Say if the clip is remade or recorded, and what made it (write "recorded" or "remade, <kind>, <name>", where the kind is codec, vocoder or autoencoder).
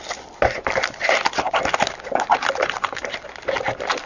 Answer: recorded